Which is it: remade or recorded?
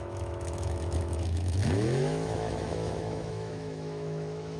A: remade